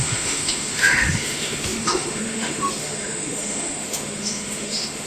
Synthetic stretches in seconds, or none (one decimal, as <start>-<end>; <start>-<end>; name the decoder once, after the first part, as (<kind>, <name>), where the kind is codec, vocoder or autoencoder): 0.0-5.1 (autoencoder, DAC-VAE)